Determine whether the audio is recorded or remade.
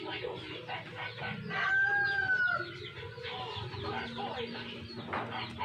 recorded